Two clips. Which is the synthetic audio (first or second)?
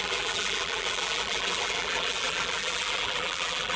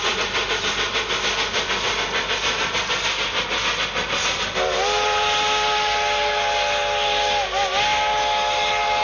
first